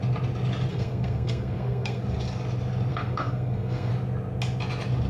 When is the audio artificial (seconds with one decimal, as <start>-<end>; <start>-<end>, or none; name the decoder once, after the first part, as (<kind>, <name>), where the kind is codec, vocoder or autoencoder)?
0.7-2.0 (codec, SNAC); 2.9-3.9